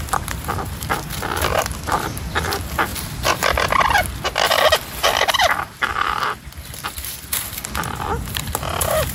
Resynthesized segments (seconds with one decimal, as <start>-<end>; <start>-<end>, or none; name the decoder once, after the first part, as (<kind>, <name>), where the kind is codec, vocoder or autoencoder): 0.0-2.9 (vocoder, BigVGAN v2); 4.8-9.1